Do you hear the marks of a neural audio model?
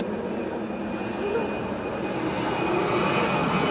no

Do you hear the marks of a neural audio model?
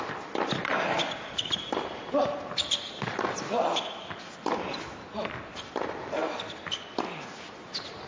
no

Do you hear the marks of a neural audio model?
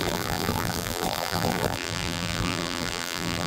yes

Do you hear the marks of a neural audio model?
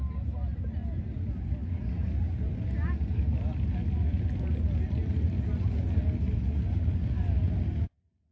no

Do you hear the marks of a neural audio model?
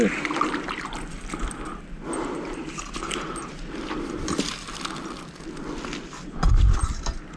no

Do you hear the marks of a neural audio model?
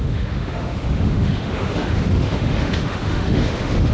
yes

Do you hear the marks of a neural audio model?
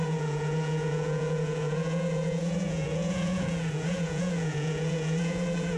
yes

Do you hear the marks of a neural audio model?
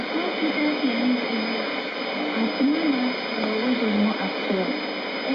no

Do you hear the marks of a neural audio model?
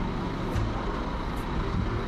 no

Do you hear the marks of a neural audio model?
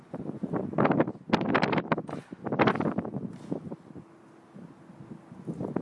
no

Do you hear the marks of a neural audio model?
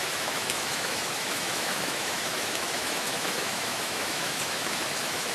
yes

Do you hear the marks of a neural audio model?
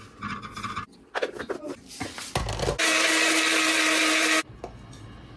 no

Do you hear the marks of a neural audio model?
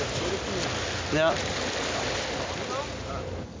no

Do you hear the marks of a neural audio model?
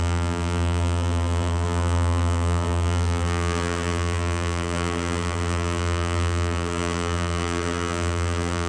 yes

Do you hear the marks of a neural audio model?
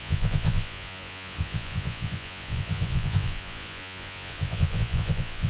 yes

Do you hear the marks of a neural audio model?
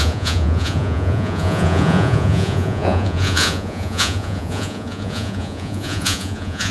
yes